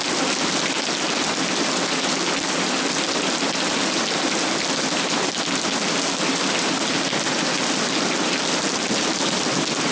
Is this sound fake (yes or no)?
no